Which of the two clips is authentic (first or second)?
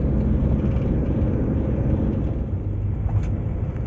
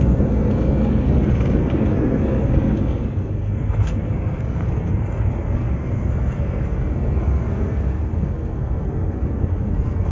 first